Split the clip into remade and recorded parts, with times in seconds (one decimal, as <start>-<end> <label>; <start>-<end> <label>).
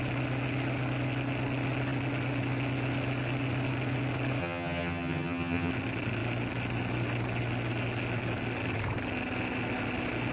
0.0-4.4 recorded; 4.4-5.7 remade; 5.7-10.3 recorded